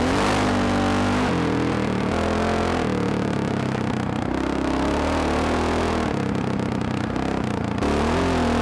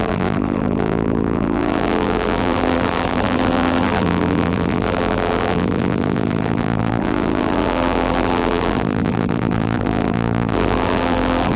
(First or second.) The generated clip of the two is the second